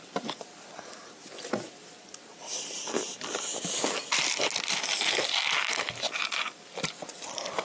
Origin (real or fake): real